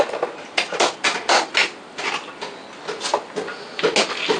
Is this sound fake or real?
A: real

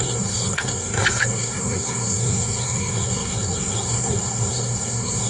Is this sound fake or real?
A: fake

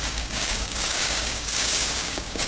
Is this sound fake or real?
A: fake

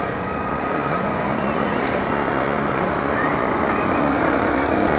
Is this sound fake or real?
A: fake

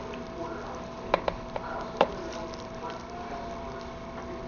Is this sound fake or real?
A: real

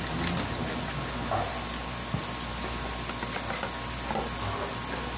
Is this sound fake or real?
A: real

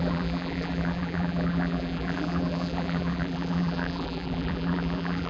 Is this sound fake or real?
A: fake